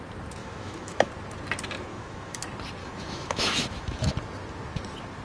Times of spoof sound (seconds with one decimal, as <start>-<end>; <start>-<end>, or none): 0.4-1.1; 1.9-2.4; 2.8-4.1